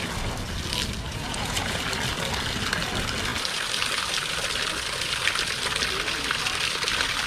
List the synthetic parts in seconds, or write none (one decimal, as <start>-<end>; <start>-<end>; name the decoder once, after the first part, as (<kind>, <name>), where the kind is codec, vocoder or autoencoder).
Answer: 1.1-1.8 (vocoder, Vocos)